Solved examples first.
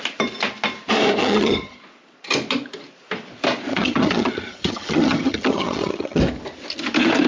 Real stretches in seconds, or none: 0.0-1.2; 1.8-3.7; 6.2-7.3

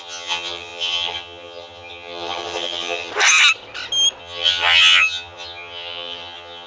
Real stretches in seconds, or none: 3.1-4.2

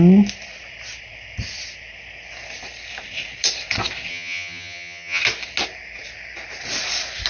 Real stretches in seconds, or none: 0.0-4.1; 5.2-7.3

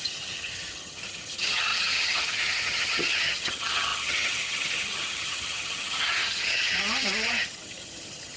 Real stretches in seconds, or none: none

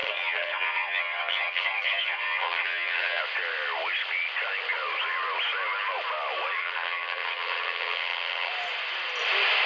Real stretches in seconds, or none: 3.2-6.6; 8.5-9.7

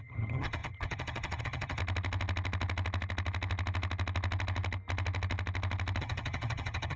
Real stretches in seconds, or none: 1.8-6.0

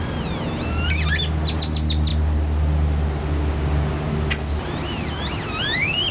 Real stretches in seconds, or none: 0.0-6.1